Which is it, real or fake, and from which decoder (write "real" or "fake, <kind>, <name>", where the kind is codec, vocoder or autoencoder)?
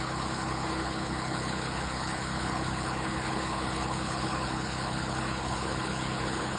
fake, codec, HILCodec